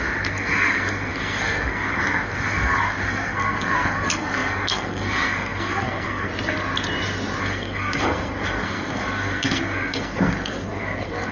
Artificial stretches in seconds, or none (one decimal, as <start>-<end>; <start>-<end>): 0.0-6.3; 7.4-11.3